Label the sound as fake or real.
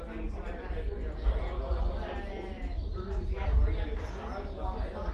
real